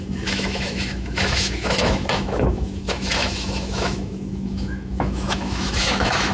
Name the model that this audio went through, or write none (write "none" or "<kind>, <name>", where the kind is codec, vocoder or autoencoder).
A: autoencoder, DAC-VAE